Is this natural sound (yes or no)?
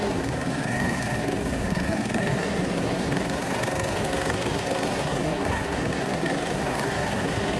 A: no